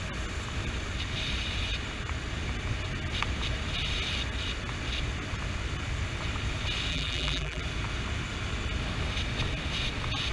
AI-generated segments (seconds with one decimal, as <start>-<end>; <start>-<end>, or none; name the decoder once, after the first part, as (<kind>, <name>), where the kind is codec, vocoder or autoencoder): 6.9-7.6 (vocoder, BigVGAN v2)